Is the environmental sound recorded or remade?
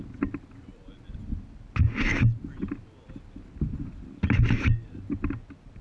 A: recorded